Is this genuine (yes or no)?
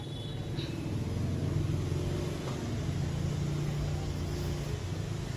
yes